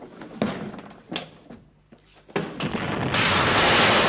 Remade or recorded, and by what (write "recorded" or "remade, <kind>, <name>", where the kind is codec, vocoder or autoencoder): recorded